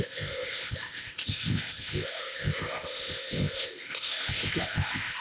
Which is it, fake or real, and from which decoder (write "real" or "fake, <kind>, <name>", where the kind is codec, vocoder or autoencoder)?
fake, codec, ZipCodec